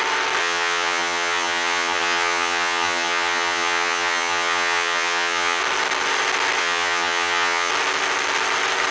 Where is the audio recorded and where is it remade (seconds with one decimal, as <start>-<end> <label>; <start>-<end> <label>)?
0.0-0.4 recorded; 0.4-5.6 remade; 5.6-6.6 recorded; 6.6-7.7 remade; 7.7-8.9 recorded